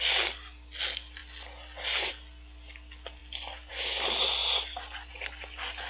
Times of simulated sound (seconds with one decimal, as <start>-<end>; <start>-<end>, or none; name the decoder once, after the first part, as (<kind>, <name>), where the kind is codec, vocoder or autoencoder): none

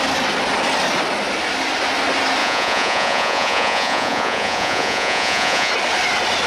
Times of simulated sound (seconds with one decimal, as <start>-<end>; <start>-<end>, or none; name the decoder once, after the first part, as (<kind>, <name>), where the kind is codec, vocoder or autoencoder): 2.4-5.7 (vocoder, Vocos)